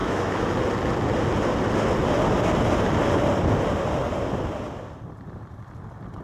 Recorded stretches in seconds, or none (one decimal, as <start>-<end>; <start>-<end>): 0.5-6.2